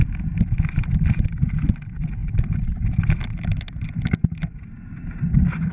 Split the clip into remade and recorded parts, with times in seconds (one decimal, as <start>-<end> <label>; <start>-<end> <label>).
0.0-5.7 recorded